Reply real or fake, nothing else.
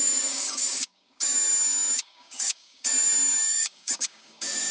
fake